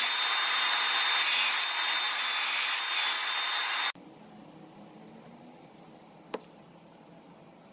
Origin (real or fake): real